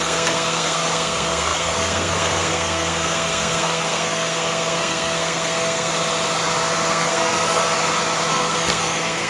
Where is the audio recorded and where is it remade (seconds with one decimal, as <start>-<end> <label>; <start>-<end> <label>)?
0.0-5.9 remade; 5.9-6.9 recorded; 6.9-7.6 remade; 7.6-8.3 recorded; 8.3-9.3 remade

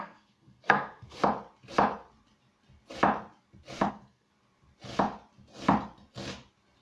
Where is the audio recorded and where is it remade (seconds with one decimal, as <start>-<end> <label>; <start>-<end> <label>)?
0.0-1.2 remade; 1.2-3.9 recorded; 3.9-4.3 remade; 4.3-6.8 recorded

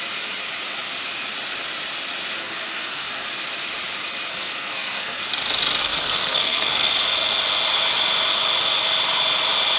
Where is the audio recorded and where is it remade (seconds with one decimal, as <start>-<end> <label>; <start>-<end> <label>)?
0.0-2.4 recorded; 2.4-3.3 remade; 3.3-4.3 recorded; 4.3-5.2 remade; 5.2-5.8 recorded; 5.8-6.9 remade; 6.9-9.8 recorded

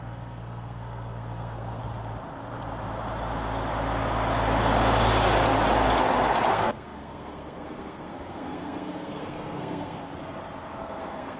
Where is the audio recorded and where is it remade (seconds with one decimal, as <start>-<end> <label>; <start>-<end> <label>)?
0.0-1.8 remade; 1.8-6.5 recorded; 6.5-10.1 remade; 10.1-10.8 recorded; 10.8-11.4 remade

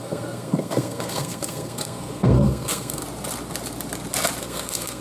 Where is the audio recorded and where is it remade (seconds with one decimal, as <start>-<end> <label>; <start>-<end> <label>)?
0.0-3.0 remade; 3.0-4.4 recorded; 4.4-5.0 remade

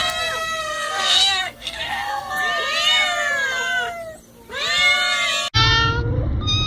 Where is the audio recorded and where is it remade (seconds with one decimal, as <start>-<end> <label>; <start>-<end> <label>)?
0.0-0.6 recorded; 0.6-2.3 remade; 2.3-6.7 recorded

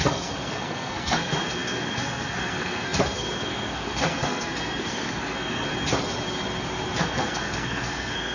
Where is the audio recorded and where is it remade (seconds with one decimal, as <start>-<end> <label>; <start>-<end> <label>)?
0.0-5.7 remade; 5.7-7.0 recorded; 7.0-8.3 remade

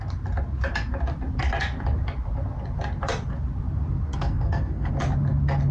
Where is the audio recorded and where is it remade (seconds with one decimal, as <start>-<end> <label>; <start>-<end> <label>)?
0.0-4.1 recorded; 4.1-4.9 remade; 4.9-5.7 recorded